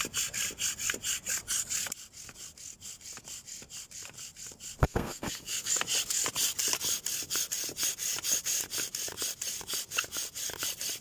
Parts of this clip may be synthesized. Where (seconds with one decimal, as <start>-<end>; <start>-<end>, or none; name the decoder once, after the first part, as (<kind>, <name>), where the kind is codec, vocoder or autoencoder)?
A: 4.8-5.7 (codec, SNAC)